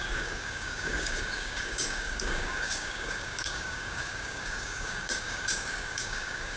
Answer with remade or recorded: remade